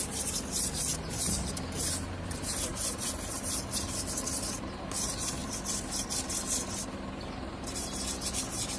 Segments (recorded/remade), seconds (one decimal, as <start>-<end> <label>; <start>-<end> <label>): 0.0-8.8 recorded